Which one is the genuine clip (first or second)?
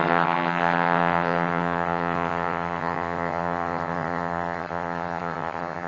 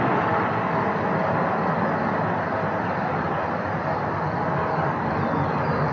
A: second